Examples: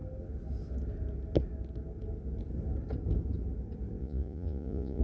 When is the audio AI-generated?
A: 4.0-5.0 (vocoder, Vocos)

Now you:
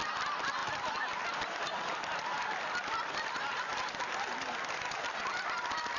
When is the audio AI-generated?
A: none

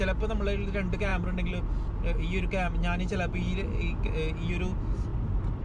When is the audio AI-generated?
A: 5.1-5.6 (vocoder, BigVGAN v2)

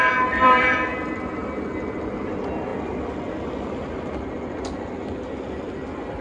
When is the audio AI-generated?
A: 0.0-1.2 (vocoder, BigVGAN v2)